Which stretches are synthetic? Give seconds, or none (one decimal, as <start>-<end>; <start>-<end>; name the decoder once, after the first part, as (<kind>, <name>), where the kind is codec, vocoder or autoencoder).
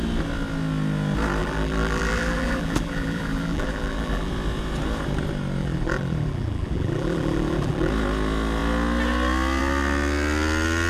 1.4-4.3 (vocoder, BigVGAN v2); 5.6-7.9